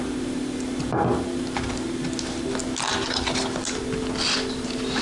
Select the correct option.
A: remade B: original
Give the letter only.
B